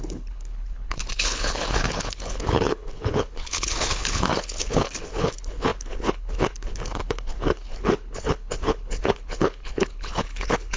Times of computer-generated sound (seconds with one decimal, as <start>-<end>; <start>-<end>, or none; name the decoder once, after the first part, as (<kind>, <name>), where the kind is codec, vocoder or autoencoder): 0.0-10.8 (codec, HILCodec)